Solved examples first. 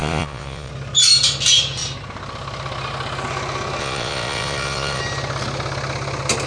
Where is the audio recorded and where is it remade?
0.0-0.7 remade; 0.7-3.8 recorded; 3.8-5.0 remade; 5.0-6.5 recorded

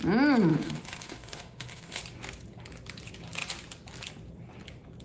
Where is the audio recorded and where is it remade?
0.0-0.5 recorded; 0.5-2.0 remade; 2.0-5.0 recorded

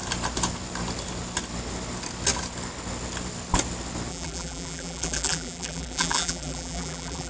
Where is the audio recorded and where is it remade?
0.0-4.1 recorded; 4.1-7.3 remade